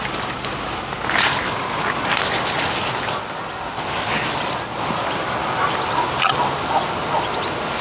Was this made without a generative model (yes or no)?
yes